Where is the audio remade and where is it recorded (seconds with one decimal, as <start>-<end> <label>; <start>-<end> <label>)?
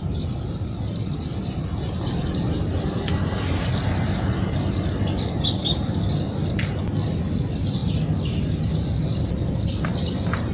0.0-10.5 recorded